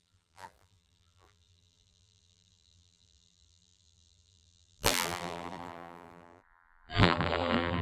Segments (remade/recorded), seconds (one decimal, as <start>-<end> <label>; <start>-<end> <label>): 0.0-7.8 remade